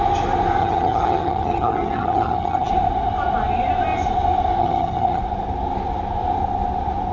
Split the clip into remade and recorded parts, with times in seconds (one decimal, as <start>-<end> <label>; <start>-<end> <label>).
0.0-0.6 recorded; 0.6-2.7 remade; 2.7-4.6 recorded; 4.6-5.2 remade; 5.2-7.1 recorded